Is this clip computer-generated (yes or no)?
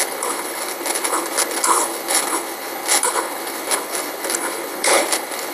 yes